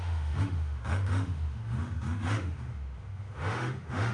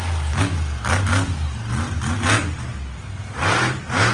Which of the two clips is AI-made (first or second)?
first